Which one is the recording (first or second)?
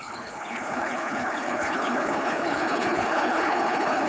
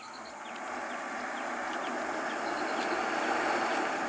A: second